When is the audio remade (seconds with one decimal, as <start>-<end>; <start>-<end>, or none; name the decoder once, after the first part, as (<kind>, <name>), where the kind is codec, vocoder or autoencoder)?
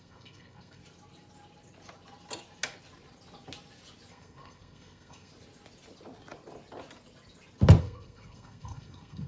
0.0-0.8 (codec, SNAC); 4.1-5.3; 7.8-9.3